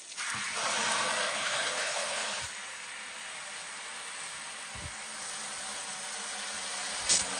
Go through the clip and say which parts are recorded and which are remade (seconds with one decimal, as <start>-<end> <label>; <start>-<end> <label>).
0.0-1.3 recorded; 1.3-2.4 remade; 2.4-7.4 recorded